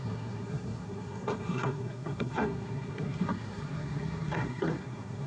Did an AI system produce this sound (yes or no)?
yes